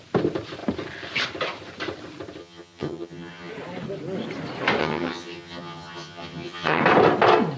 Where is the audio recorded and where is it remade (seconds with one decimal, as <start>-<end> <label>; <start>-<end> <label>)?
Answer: 0.0-2.4 recorded; 2.4-3.5 remade; 3.5-4.8 recorded; 4.8-6.8 remade; 6.8-7.6 recorded